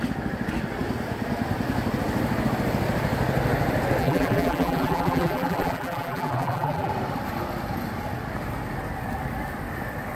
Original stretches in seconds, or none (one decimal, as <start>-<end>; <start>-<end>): 0.0-4.0; 6.9-10.1